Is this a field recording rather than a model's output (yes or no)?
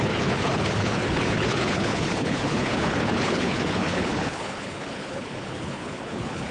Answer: no